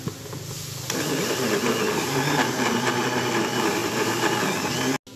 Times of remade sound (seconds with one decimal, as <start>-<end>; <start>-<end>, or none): 3.8-4.3